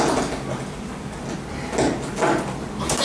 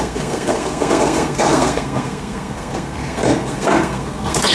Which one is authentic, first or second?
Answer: first